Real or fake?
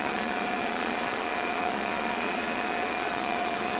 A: fake